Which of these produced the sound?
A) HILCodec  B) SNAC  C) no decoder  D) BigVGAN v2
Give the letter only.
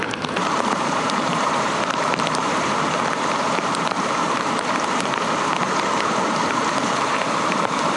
D